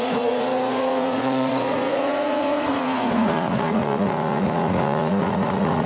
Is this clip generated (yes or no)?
yes